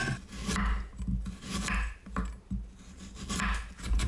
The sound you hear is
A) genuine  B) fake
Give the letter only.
A